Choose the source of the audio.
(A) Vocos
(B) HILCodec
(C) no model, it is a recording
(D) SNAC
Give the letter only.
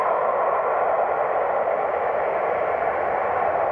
C